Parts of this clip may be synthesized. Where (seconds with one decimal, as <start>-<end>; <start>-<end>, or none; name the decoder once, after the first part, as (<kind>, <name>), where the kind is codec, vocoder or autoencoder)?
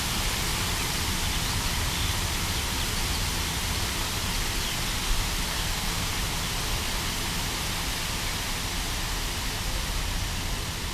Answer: 5.5-6.1 (codec, SNAC)